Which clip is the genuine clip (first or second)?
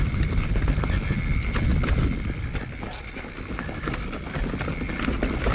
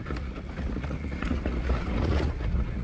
first